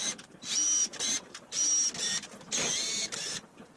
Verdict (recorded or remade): recorded